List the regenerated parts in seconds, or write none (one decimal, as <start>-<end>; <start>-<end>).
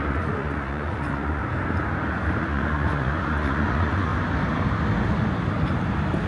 0.0-1.4; 2.4-4.1